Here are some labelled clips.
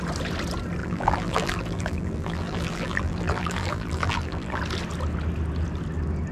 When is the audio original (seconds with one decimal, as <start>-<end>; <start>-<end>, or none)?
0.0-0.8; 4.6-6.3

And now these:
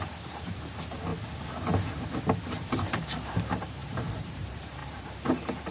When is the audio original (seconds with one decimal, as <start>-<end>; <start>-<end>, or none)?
1.1-2.7

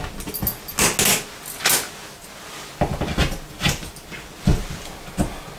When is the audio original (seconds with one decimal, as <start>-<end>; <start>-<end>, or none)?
0.0-5.6